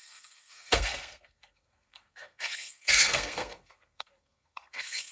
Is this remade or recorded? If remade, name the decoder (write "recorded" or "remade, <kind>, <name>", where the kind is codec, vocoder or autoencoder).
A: remade, codec, SNAC